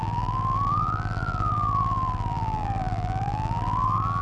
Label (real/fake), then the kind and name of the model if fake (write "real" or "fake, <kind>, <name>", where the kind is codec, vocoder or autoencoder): fake, vocoder, BigVGAN v2